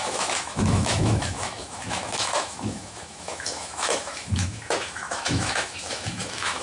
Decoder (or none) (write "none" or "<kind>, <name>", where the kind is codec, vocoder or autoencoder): autoencoder, DAC-VAE